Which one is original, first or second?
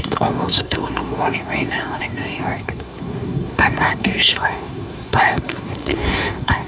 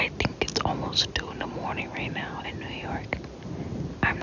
second